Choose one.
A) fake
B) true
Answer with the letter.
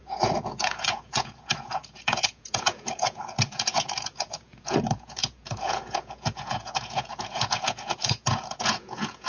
A